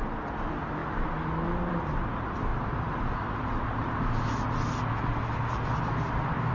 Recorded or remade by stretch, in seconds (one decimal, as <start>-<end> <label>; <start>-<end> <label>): 0.0-6.5 recorded